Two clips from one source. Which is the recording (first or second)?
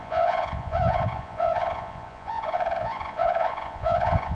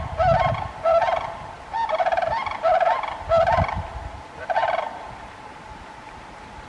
second